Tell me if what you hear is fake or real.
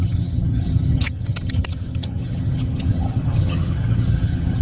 fake